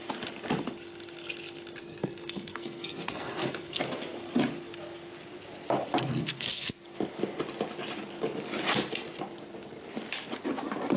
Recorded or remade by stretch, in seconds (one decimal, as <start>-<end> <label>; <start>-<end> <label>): 0.0-1.8 recorded; 1.8-3.8 remade; 3.8-6.0 recorded; 6.0-6.7 remade; 6.7-11.0 recorded